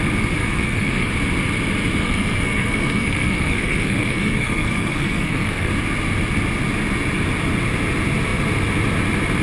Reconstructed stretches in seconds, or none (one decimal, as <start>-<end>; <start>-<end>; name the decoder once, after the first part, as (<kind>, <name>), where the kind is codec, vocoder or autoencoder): 0.4-1.1 (codec, SNAC); 2.0-5.7